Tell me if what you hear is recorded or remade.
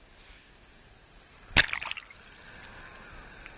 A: recorded